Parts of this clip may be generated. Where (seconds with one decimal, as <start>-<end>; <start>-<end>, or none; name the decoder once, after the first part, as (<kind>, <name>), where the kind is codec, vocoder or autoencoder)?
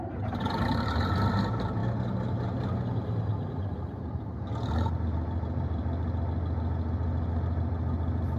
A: 0.0-5.8 (vocoder, BigVGAN v2)